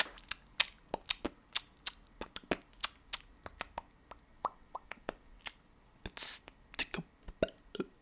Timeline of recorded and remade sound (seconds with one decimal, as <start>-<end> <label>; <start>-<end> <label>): 0.0-4.3 recorded; 4.3-5.4 remade; 5.4-8.0 recorded